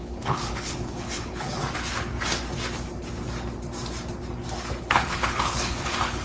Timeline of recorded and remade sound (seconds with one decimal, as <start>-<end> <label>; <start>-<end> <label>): 0.0-1.6 remade; 1.6-4.8 recorded; 4.8-6.2 remade